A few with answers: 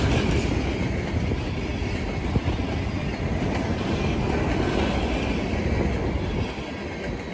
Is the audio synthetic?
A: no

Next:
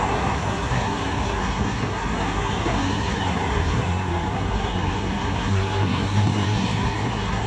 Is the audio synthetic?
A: yes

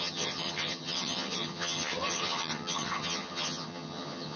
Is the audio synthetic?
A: yes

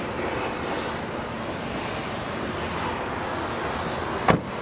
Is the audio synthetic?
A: no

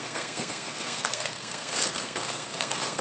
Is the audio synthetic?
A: yes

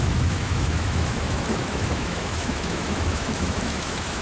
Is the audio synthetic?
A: yes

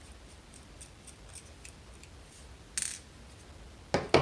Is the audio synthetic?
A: no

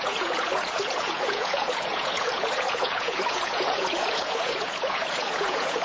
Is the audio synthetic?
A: yes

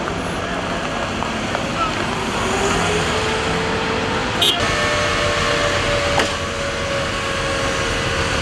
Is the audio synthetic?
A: no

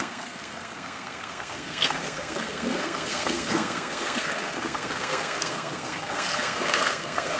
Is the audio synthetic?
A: yes